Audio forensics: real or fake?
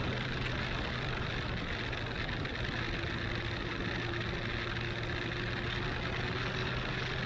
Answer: real